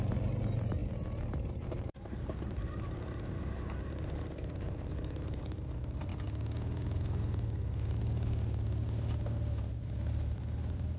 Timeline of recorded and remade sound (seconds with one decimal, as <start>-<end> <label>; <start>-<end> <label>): 0.0-0.8 remade; 0.8-1.5 recorded; 1.5-6.1 remade; 6.1-10.1 recorded; 10.1-11.0 remade